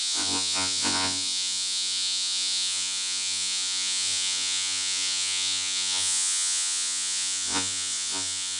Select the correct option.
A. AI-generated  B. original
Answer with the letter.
A